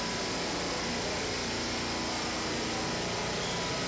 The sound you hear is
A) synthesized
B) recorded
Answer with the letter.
B